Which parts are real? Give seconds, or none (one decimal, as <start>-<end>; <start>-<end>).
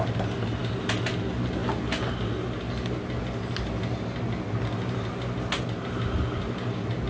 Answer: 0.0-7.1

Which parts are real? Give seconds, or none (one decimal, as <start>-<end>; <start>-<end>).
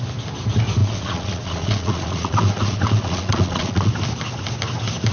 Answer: 0.0-0.8; 3.9-5.1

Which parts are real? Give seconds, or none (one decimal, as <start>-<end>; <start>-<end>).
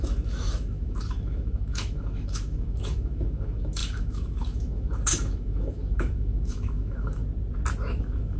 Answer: 7.2-7.9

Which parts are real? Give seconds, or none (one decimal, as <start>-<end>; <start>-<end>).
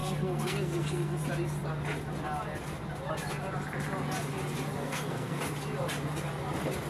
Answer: 1.2-4.8; 5.4-6.9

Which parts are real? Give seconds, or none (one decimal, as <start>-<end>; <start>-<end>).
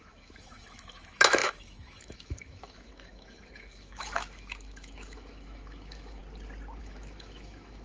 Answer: 6.2-6.8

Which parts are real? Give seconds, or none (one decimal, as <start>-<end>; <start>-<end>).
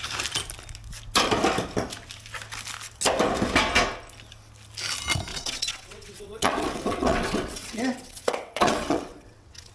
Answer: 0.0-5.3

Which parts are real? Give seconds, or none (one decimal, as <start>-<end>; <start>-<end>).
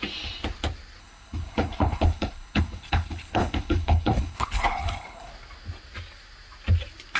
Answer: 0.0-1.0; 5.3-7.2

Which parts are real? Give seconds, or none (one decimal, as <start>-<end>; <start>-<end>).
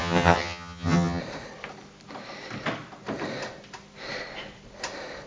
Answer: 1.2-5.3